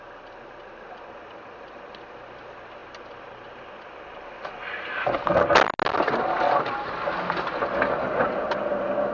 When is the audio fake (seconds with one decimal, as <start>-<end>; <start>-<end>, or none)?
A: none